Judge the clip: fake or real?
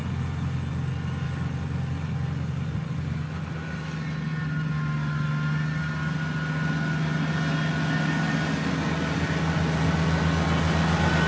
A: real